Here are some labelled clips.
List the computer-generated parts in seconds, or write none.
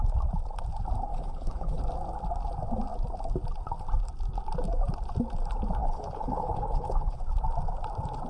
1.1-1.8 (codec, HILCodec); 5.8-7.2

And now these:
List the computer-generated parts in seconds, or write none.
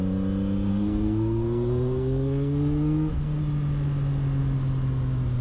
0.7-3.4 (codec, SNAC)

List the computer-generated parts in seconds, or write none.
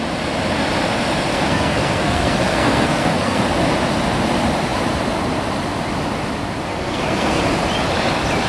1.3-3.4 (codec, SNAC); 6.7-7.4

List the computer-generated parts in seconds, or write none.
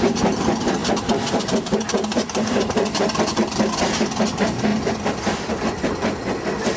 0.8-3.8 (vocoder, BigVGAN v2); 4.7-5.5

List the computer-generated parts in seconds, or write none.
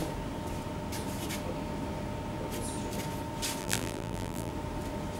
3.6-4.5 (vocoder, BigVGAN v2)